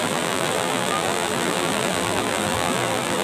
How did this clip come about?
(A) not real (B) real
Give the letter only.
A